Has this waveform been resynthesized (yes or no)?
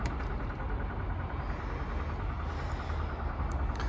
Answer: no